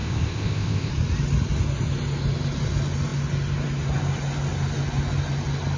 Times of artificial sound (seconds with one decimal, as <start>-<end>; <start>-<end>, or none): 0.0-0.9